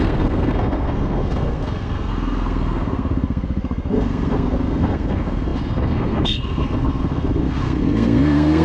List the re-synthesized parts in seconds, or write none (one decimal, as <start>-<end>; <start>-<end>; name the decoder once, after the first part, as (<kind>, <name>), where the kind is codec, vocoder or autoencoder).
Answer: 0.0-8.6 (codec, SNAC)